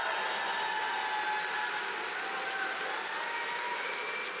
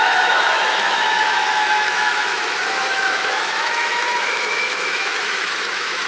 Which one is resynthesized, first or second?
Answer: second